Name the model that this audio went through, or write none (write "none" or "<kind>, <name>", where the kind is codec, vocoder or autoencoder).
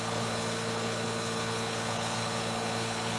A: codec, HILCodec